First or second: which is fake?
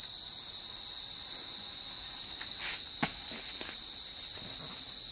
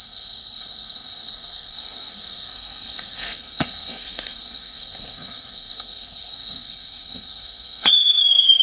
second